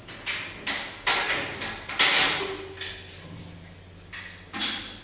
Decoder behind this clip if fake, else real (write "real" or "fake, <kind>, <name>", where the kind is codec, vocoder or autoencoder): real